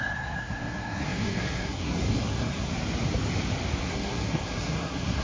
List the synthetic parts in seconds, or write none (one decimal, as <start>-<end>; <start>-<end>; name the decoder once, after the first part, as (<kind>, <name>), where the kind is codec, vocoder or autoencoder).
0.0-2.7 (codec, SNAC); 3.8-5.2